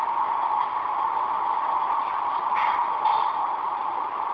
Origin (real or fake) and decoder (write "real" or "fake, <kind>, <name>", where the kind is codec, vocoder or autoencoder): real